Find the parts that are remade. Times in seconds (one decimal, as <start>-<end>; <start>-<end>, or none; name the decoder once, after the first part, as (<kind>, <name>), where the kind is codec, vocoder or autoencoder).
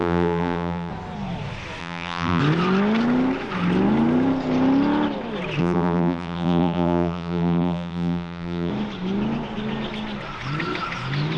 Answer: 0.0-0.9 (vocoder, BigVGAN v2); 1.8-2.4; 5.6-8.7